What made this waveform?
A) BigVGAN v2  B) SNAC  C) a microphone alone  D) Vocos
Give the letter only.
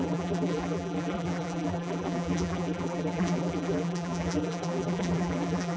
A